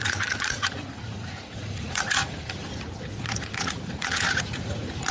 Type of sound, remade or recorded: remade